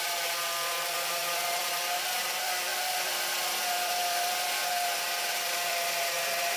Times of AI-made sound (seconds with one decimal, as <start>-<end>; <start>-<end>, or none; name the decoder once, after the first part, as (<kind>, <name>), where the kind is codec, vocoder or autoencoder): 0.0-6.6 (vocoder, BigVGAN v2)